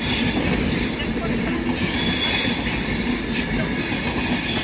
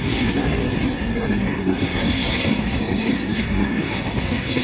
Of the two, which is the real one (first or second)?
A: first